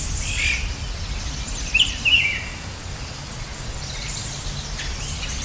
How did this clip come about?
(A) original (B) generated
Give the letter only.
A